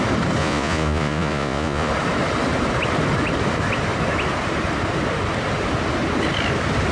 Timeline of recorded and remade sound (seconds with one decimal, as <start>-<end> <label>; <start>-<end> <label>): 0.0-0.4 recorded; 0.4-1.9 remade; 1.9-6.9 recorded

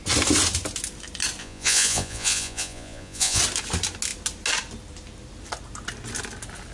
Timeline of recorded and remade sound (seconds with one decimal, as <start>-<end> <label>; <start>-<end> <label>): 0.0-1.4 recorded; 1.4-3.4 remade; 3.4-6.7 recorded

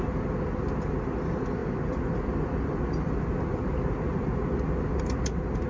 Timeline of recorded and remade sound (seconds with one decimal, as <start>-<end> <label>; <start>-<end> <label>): 0.0-5.7 recorded

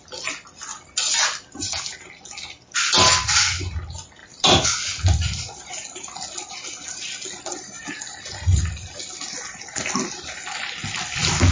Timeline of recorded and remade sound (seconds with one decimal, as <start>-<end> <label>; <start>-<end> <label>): 0.0-11.5 recorded

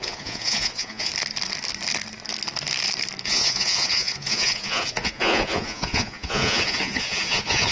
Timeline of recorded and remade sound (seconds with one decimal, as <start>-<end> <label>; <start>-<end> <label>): 0.0-1.1 remade; 1.1-3.2 recorded; 3.2-7.7 remade

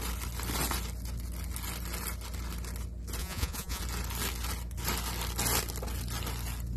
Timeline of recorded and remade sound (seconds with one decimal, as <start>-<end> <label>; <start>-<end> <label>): 0.0-3.2 recorded; 3.2-3.8 remade; 3.8-6.8 recorded

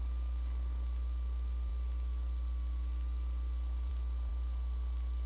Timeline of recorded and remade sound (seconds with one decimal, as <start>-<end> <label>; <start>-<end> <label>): 0.0-5.3 recorded